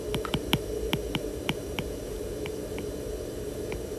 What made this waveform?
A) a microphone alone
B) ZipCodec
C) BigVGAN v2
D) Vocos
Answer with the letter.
C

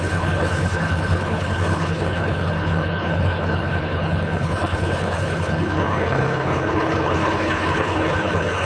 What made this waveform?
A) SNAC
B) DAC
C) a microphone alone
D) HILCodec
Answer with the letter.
D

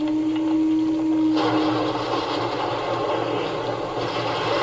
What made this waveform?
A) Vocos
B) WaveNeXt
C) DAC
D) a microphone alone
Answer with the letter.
D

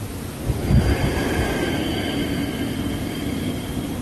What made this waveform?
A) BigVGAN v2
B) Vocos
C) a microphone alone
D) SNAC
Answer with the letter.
C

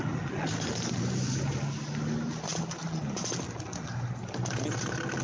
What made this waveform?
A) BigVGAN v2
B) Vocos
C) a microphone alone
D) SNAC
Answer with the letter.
C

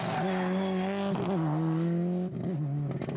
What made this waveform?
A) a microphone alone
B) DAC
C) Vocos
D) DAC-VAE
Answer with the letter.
A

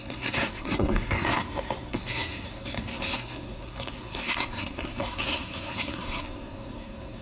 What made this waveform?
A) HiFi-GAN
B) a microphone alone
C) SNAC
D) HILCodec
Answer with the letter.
C